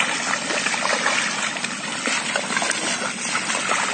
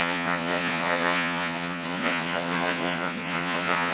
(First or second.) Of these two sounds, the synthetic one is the second